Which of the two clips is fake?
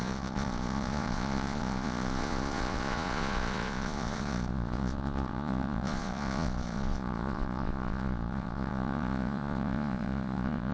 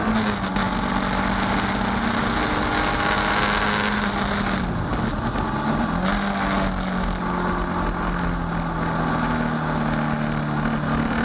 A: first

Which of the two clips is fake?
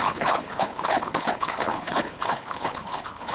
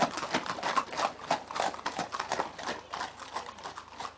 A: first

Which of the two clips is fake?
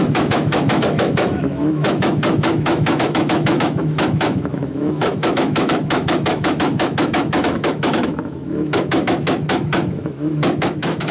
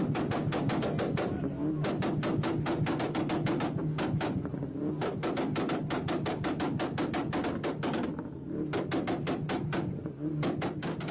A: first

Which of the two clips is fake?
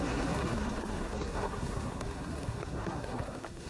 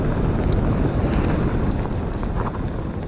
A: first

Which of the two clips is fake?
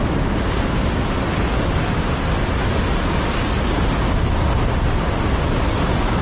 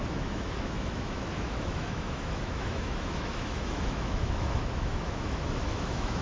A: second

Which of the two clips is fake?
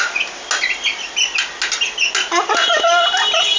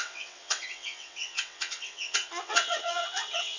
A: second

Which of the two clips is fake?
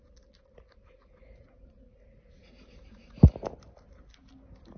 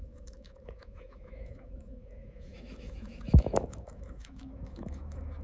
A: second